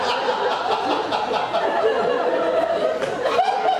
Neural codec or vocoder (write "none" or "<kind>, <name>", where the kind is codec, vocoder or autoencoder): none